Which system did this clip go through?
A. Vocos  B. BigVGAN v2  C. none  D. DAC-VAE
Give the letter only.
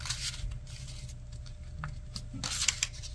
C